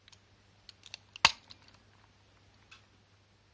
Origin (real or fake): real